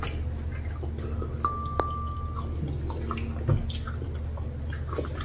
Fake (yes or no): no